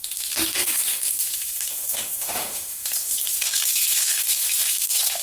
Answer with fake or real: fake